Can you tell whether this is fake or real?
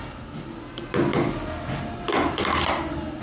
real